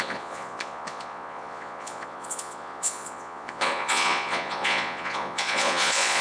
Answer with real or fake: fake